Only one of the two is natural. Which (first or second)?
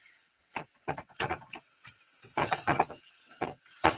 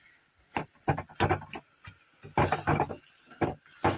second